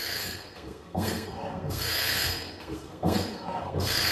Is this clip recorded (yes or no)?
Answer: no